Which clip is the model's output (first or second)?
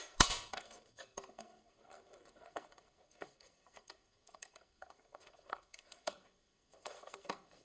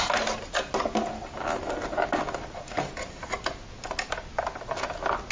first